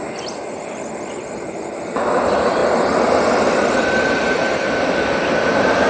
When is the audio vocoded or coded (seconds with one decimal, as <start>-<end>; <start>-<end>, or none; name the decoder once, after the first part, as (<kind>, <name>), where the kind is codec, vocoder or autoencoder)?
0.0-2.6 (vocoder, BigVGAN v2); 3.5-5.9

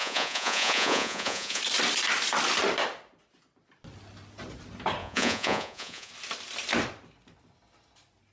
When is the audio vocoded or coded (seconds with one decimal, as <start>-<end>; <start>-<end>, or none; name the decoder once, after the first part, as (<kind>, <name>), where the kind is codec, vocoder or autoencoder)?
0.0-1.6 (vocoder, Vocos); 5.0-6.1